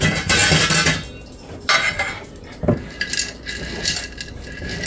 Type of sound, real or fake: real